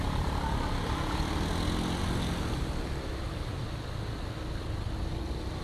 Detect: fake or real real